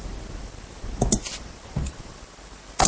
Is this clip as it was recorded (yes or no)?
yes